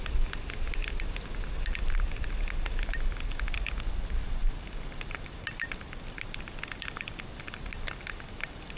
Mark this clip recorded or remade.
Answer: recorded